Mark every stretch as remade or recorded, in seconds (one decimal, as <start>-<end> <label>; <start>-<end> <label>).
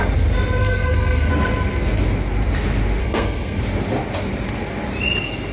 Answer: 0.0-0.6 recorded; 0.6-1.3 remade; 1.3-3.0 recorded; 3.0-3.6 remade; 3.6-5.5 recorded